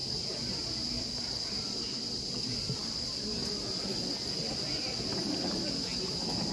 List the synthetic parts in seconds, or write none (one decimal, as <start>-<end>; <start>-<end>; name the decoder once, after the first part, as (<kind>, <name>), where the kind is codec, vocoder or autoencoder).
none